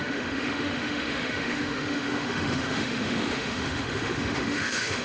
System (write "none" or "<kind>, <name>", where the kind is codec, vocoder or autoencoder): autoencoder, DAC-VAE